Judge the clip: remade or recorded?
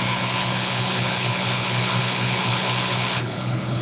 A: remade